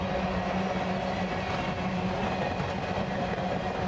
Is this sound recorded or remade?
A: recorded